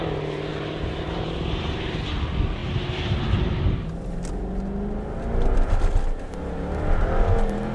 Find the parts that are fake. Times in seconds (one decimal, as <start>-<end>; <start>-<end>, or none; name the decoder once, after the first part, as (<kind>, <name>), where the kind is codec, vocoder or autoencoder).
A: 0.5-2.1 (vocoder, BigVGAN v2); 2.6-3.2